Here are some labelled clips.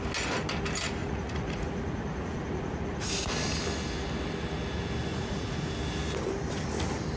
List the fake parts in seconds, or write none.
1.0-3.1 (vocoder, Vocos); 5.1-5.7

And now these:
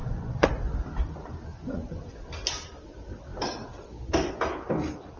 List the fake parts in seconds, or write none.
0.0-0.5 (vocoder, Vocos); 1.5-2.2